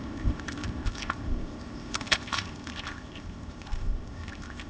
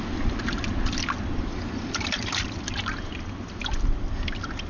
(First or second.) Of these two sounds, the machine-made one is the first